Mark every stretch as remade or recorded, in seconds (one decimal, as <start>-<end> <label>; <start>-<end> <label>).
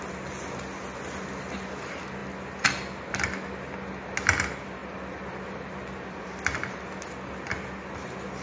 0.0-8.4 recorded